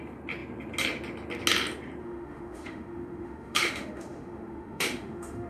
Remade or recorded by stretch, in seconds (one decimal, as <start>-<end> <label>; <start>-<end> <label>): 0.0-2.0 recorded; 2.0-5.5 remade